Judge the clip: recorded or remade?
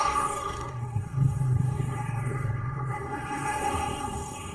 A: remade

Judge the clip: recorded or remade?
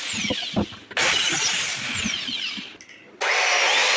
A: recorded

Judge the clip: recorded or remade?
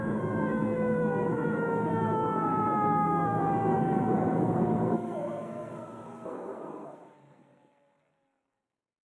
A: remade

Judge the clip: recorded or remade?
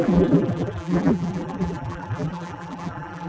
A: remade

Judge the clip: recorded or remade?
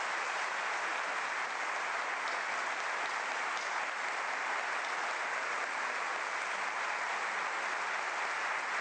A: recorded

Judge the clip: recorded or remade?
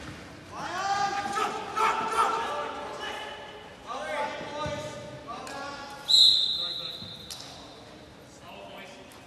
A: recorded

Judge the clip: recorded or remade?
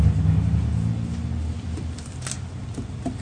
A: recorded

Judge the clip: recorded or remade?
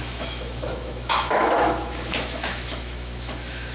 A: remade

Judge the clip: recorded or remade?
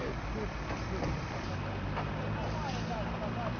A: recorded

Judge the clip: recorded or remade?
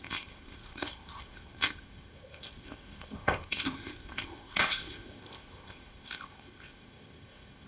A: remade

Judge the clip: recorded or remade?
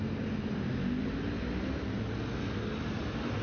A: recorded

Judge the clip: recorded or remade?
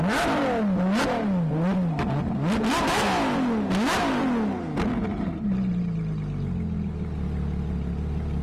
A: recorded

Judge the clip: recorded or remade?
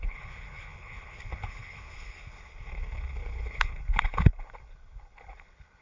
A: remade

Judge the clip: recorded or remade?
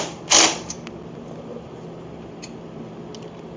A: recorded